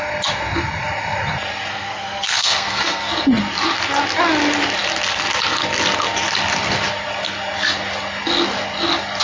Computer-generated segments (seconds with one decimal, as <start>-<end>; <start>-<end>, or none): 1.7-3.1